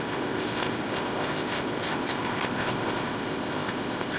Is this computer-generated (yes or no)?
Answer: yes